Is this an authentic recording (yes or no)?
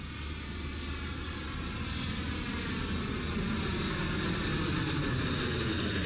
yes